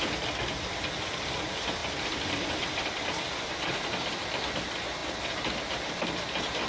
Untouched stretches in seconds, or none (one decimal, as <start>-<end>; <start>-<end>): 0.0-1.8; 2.6-5.0; 5.9-6.7